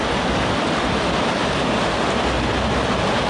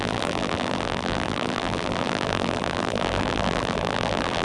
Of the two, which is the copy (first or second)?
second